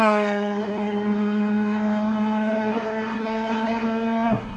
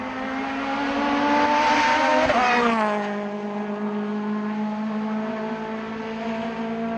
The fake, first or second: first